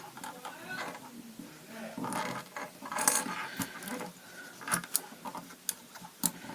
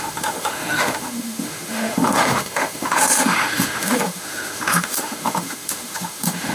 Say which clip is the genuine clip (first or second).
first